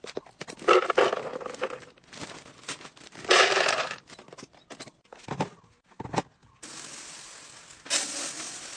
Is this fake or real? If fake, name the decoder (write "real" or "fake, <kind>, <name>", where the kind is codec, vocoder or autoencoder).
real